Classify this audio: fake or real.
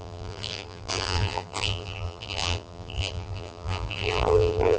fake